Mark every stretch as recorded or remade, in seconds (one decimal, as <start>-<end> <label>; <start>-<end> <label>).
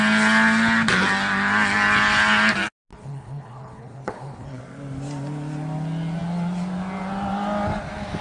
0.0-2.9 recorded; 2.9-4.6 remade; 4.6-8.2 recorded